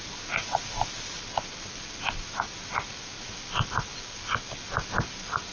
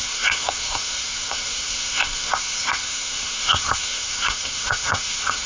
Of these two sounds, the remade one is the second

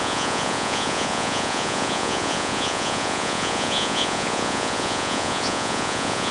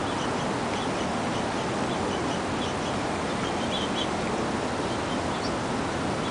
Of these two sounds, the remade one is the first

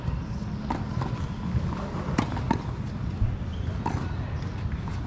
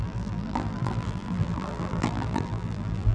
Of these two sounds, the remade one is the second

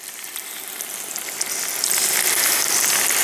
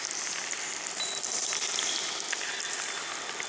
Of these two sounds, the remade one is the second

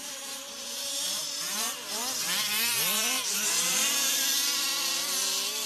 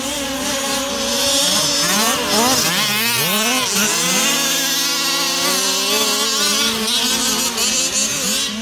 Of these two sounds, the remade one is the first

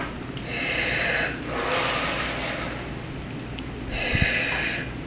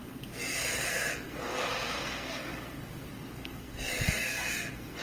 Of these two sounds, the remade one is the second